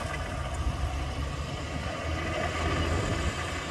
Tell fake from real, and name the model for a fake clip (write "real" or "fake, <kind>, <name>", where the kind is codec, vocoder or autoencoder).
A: real